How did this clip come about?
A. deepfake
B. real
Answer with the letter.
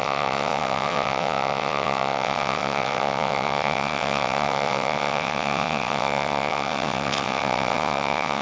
A